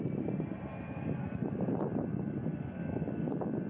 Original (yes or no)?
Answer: yes